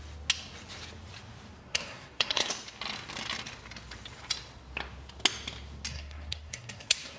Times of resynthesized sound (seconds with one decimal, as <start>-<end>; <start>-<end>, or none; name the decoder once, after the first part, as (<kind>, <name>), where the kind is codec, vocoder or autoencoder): 1.6-2.5 (codec, SNAC); 5.9-7.2